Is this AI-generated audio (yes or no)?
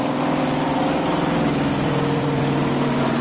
yes